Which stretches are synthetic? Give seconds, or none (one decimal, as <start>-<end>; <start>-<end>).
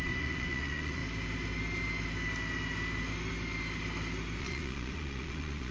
0.0-1.0; 4.4-5.7